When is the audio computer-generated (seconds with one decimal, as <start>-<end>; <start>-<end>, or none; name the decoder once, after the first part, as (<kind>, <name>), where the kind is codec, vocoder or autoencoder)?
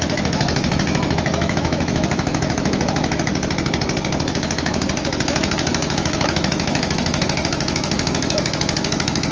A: 0.0-3.3 (autoencoder, DAC-VAE); 4.3-9.3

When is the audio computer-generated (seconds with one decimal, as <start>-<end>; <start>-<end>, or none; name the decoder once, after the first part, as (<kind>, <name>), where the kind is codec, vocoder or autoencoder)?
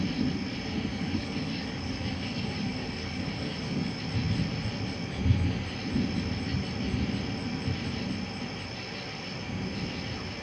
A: 0.9-4.0 (codec, DAC)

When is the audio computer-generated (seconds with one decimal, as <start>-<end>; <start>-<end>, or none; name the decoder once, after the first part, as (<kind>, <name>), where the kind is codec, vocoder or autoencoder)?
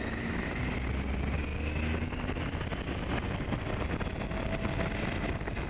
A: none